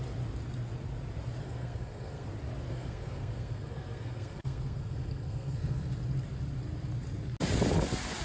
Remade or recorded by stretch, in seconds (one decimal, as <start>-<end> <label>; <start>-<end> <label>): 0.0-1.4 recorded; 1.4-2.3 remade; 2.3-2.7 recorded; 2.7-5.9 remade; 5.9-8.2 recorded